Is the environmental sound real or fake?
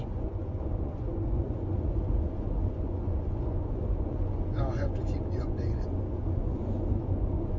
fake